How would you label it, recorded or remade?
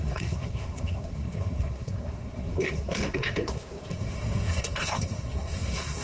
remade